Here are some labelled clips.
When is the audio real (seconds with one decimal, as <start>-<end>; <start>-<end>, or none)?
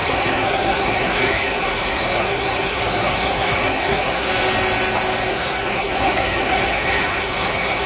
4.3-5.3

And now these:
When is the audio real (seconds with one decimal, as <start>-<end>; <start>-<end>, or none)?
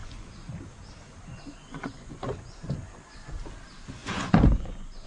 0.5-1.3; 3.3-4.0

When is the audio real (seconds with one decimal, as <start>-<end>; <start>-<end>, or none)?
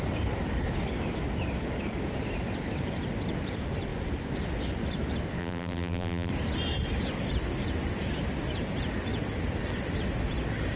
0.0-5.4; 6.3-10.8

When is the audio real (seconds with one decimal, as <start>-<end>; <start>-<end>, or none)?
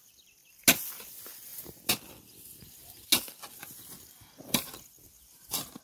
0.0-5.8